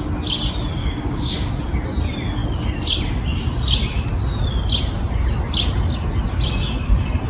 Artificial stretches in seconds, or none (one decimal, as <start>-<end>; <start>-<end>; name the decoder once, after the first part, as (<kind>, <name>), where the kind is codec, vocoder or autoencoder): 0.8-1.5 (codec, DAC)